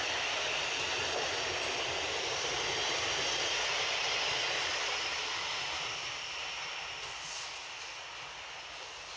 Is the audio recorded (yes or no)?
yes